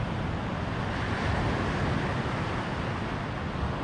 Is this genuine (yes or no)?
yes